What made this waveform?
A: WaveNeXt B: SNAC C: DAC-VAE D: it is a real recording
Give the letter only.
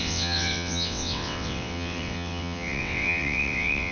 A